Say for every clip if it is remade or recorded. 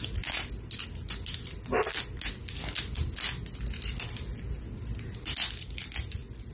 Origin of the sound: recorded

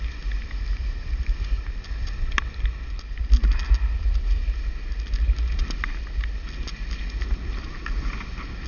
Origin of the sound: recorded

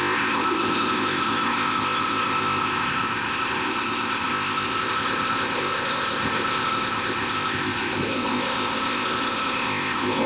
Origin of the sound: remade